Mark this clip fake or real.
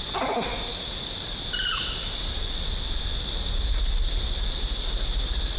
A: real